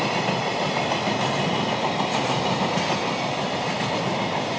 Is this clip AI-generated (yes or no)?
no